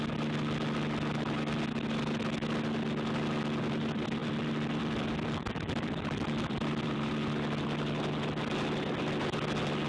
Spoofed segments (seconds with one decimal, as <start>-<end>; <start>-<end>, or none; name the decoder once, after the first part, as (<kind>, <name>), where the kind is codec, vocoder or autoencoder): 4.2-7.1 (vocoder, BigVGAN v2)